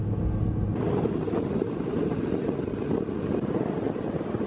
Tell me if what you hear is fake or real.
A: real